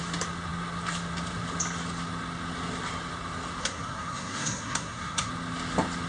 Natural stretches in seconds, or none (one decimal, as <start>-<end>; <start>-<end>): 0.0-3.6; 5.3-6.1